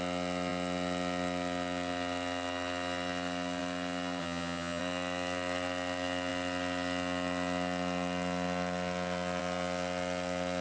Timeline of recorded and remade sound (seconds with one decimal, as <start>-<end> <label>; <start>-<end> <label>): 0.0-4.2 recorded; 4.2-4.8 remade; 4.8-10.6 recorded